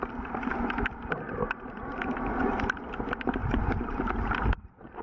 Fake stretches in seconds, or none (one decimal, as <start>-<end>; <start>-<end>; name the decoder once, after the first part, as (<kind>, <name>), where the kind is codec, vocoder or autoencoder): 1.9-2.4 (vocoder, BigVGAN v2); 3.4-4.0